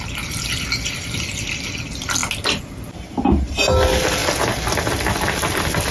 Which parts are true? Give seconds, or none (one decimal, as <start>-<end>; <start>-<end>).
0.0-5.9